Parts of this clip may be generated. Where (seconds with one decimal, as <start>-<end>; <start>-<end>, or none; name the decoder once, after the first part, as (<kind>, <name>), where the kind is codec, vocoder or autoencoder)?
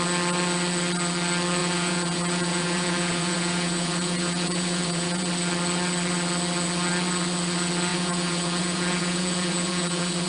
1.6-5.3 (vocoder, Vocos); 7.9-10.3